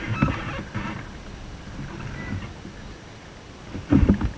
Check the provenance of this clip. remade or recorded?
recorded